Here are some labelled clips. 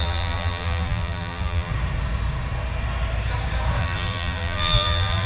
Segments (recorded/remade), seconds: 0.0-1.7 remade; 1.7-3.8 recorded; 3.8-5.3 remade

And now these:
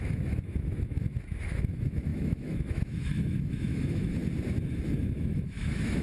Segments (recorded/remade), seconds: 0.0-4.2 remade; 4.2-5.0 recorded; 5.0-6.0 remade

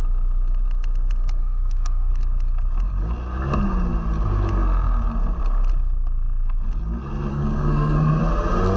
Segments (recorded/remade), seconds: 0.0-1.4 recorded; 1.4-2.1 remade; 2.1-7.3 recorded; 7.3-8.2 remade; 8.2-8.8 recorded

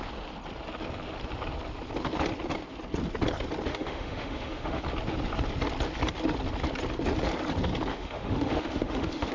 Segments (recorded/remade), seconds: 0.0-3.7 recorded; 3.7-4.8 remade; 4.8-7.9 recorded; 7.9-9.3 remade

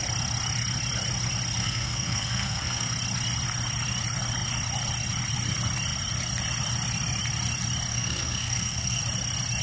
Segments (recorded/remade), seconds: 0.0-1.6 recorded; 1.6-2.9 remade; 2.9-7.9 recorded; 7.9-9.0 remade; 9.0-9.6 recorded